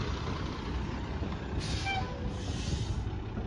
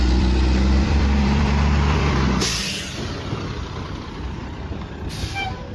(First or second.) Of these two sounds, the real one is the first